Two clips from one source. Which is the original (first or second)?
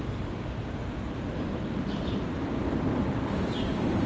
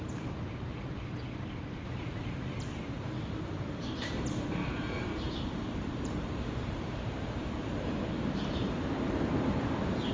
first